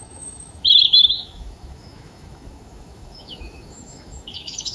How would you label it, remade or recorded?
remade